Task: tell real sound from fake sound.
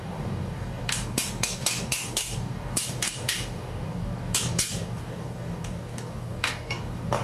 fake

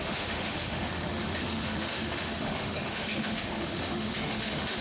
fake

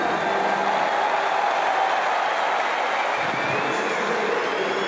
real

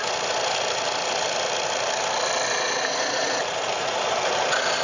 real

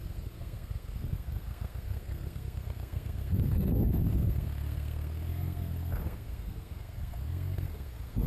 fake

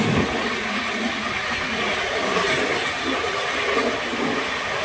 real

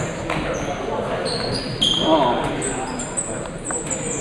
real